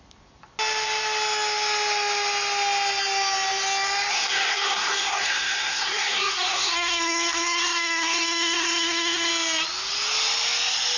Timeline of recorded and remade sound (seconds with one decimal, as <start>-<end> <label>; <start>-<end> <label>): 0.0-4.1 recorded; 4.1-9.3 remade; 9.3-11.0 recorded